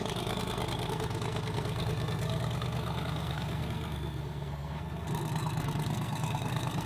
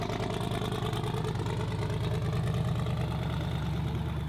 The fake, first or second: first